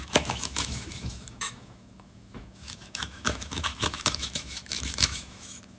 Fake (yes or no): yes